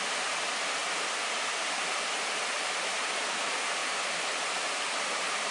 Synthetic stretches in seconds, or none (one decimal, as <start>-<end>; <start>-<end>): 0.0-0.8; 2.3-5.5